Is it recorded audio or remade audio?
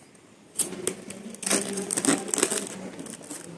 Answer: recorded